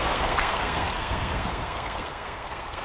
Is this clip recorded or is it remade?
remade